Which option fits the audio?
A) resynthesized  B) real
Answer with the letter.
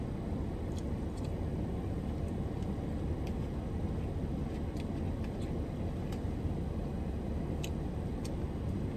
B